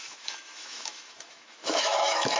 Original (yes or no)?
no